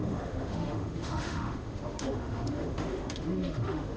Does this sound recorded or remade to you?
remade